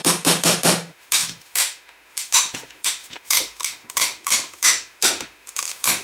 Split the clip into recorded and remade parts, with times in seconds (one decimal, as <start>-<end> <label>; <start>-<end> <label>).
0.0-6.0 remade